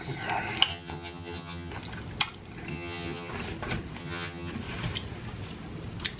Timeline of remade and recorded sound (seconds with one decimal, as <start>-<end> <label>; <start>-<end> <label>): 0.0-0.7 recorded; 0.7-1.7 remade; 1.7-2.7 recorded; 2.7-3.3 remade; 3.3-4.0 recorded; 4.0-4.5 remade; 4.5-6.2 recorded